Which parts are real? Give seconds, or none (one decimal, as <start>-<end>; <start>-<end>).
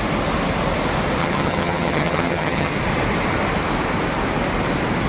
0.0-1.2; 2.7-5.1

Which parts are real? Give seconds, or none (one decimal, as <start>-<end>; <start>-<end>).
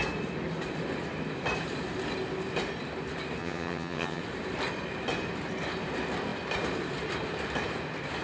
0.0-3.4; 4.2-8.2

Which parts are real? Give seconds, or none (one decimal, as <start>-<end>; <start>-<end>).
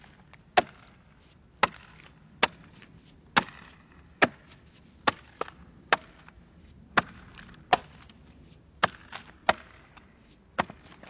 0.0-11.1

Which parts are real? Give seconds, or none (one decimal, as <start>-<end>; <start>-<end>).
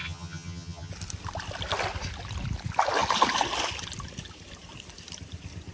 0.9-5.7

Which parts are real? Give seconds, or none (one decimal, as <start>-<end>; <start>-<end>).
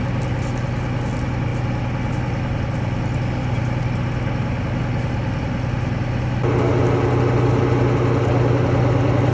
0.0-9.3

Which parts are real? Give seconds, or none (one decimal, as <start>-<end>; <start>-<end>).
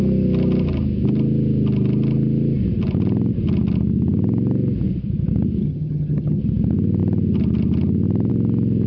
0.0-5.6; 6.4-8.9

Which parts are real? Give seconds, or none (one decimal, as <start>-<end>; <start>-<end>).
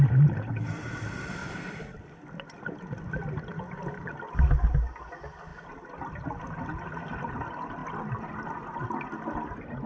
0.0-9.9